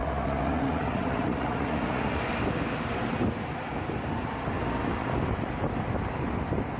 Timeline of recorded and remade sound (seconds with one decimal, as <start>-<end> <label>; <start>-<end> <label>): 0.0-2.2 remade; 2.2-6.8 recorded